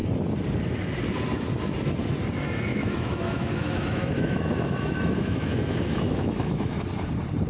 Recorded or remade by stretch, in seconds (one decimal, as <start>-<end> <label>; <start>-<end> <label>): 0.0-2.7 recorded; 2.7-6.8 remade; 6.8-7.5 recorded